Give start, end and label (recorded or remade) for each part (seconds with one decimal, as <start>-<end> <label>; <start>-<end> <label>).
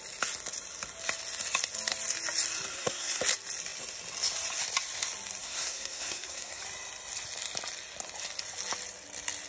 0.0-2.7 recorded; 2.7-3.2 remade; 3.2-5.4 recorded; 5.4-6.6 remade; 6.6-9.5 recorded